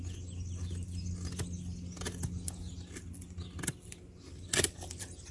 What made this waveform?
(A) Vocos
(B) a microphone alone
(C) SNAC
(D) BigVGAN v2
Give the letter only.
B